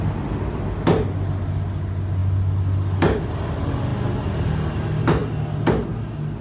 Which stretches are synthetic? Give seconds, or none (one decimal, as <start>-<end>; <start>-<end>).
none